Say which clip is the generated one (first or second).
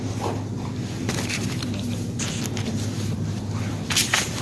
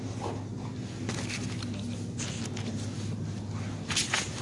first